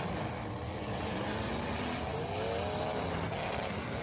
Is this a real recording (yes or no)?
yes